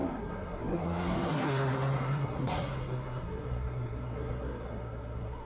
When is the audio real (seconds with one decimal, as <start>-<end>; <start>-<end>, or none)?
none

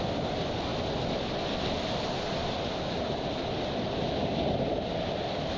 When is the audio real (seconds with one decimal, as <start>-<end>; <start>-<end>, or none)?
0.0-5.6